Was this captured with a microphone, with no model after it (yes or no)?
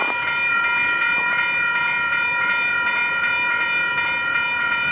no